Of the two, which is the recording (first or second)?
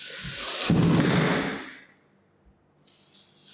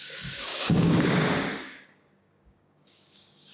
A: first